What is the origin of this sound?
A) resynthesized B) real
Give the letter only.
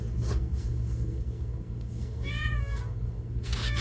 A